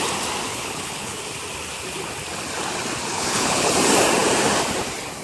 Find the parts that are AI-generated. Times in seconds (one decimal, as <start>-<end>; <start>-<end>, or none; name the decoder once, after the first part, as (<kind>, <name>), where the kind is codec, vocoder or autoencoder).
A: 0.5-1.2 (codec, HILCodec); 3.1-3.7